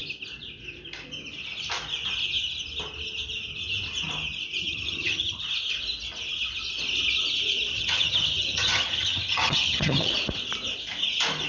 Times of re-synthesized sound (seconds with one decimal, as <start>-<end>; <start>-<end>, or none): 4.6-5.4; 7.7-10.1